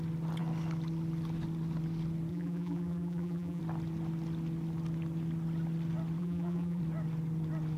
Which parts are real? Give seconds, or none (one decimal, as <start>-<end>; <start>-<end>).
0.0-2.3; 3.6-6.2; 6.8-7.8